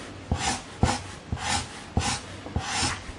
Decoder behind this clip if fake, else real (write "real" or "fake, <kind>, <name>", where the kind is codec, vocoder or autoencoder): real